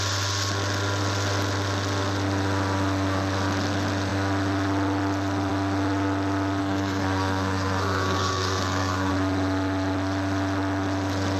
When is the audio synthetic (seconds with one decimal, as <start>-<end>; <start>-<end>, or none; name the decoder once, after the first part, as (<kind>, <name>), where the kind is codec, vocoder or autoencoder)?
6.6-9.1 (codec, SNAC)